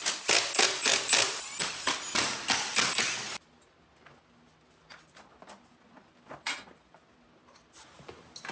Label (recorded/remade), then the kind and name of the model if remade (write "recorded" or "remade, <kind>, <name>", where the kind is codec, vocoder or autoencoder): recorded